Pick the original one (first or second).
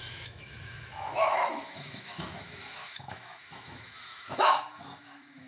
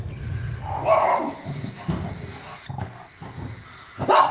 second